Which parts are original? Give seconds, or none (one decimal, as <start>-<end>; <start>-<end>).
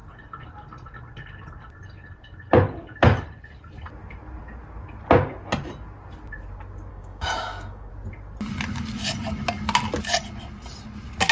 0.0-6.9; 7.9-11.3